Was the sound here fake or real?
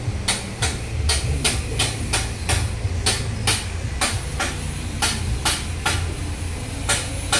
real